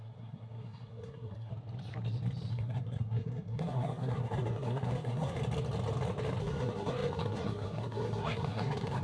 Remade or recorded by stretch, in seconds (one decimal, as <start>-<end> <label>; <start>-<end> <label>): 0.0-1.5 remade; 1.5-2.5 recorded; 2.5-5.4 remade; 5.4-6.4 recorded; 6.4-9.0 remade